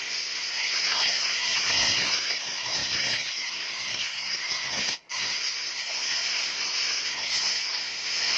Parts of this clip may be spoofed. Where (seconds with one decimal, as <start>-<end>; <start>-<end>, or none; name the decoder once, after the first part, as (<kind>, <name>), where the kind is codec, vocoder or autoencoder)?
0.0-8.4 (codec, SNAC)